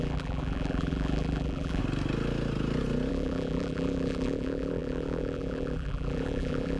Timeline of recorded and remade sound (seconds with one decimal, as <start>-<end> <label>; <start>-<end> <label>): 0.0-1.8 remade; 1.8-3.1 recorded; 3.1-6.8 remade